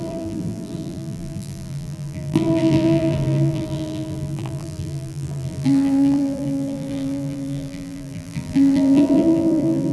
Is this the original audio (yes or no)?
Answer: no